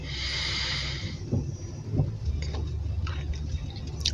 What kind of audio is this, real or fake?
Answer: real